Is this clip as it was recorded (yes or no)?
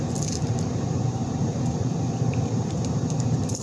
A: no